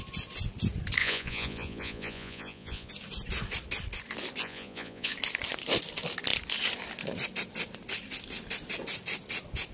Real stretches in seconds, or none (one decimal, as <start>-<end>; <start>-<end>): 0.0-1.0; 2.9-4.4; 5.1-9.7